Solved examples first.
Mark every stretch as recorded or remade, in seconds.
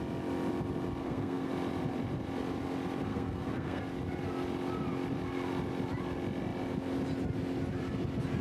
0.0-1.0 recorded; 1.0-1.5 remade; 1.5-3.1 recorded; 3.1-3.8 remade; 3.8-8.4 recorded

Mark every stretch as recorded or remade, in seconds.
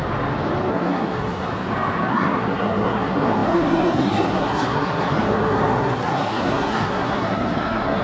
0.0-0.7 recorded; 0.7-1.5 remade; 1.5-2.1 recorded; 2.1-8.0 remade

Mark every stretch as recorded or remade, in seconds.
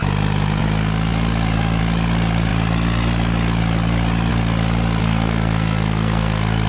0.0-5.0 recorded; 5.0-6.7 remade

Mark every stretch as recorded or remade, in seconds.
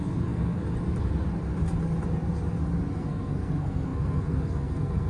0.0-0.6 remade; 0.6-2.9 recorded; 2.9-5.1 remade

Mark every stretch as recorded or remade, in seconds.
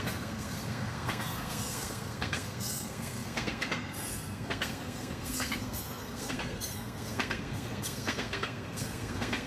0.0-9.5 remade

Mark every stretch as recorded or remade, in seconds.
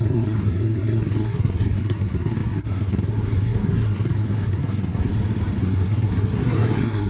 0.0-5.1 remade; 5.1-5.6 recorded; 5.6-7.1 remade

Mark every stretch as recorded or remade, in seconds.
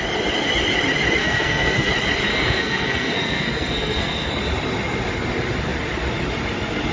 0.0-1.2 recorded; 1.2-1.9 remade; 1.9-2.3 recorded; 2.3-4.3 remade; 4.3-6.9 recorded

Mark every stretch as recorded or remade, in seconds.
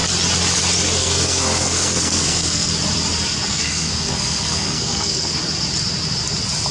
0.0-1.0 recorded; 1.0-2.7 remade; 2.7-3.5 recorded; 3.5-5.3 remade; 5.3-6.7 recorded